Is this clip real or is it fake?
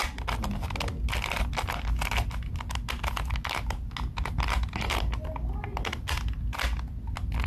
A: real